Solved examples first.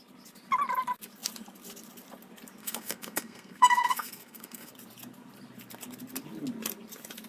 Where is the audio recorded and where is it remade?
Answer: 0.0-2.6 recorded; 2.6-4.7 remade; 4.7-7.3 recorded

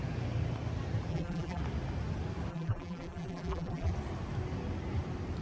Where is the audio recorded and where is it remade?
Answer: 0.0-1.1 recorded; 1.1-1.6 remade; 1.6-2.5 recorded; 2.5-3.9 remade; 3.9-5.4 recorded

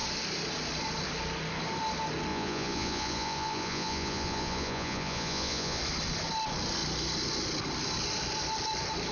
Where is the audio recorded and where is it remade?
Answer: 0.0-2.3 recorded; 2.3-5.8 remade; 5.8-9.1 recorded

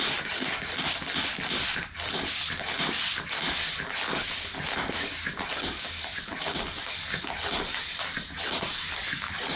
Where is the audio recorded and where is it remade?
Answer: 0.0-9.6 recorded

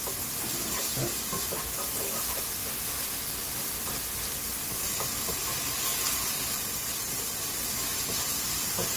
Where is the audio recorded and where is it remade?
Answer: 0.0-9.0 recorded

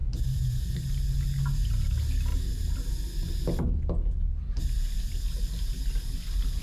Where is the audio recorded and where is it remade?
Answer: 0.0-1.0 remade; 1.0-2.3 recorded; 2.3-2.9 remade; 2.9-6.6 recorded

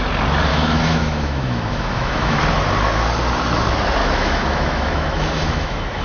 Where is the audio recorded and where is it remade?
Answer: 0.0-0.5 recorded; 0.5-2.4 remade; 2.4-4.0 recorded; 4.0-6.0 remade